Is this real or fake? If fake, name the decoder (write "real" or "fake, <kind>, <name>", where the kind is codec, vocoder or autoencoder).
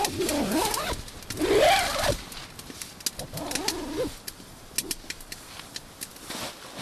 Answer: real